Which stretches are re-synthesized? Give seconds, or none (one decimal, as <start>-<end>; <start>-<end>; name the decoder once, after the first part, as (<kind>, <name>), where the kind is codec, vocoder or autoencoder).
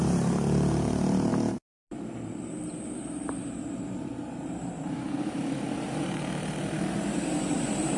0.0-8.0 (vocoder, BigVGAN v2)